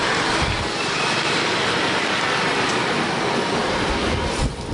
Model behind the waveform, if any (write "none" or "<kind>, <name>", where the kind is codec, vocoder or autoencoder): none